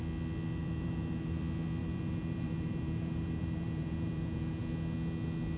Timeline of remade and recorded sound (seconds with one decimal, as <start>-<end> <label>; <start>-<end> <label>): 0.0-0.6 recorded; 0.6-1.4 remade; 1.4-1.8 recorded; 1.8-4.6 remade; 4.6-5.6 recorded